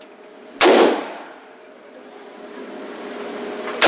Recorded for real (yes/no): yes